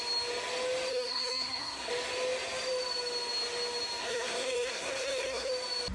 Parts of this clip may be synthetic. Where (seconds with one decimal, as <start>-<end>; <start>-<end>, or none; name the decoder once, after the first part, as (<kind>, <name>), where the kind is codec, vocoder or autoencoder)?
0.9-1.9 (codec, SNAC); 4.0-5.5